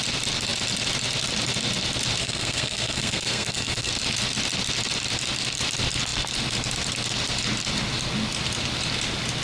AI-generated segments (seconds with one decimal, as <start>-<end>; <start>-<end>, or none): 2.2-3.9